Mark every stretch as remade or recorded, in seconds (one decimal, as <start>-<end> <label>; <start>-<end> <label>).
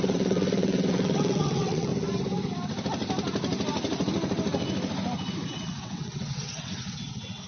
0.0-1.9 remade; 1.9-5.5 recorded; 5.5-7.5 remade